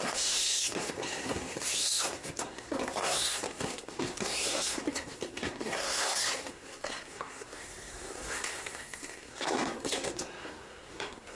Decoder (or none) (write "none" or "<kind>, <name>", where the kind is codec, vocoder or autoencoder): codec, SNAC